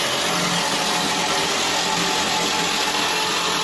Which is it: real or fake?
real